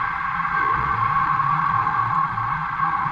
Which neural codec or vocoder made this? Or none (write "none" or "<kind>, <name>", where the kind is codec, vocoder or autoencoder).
vocoder, Vocos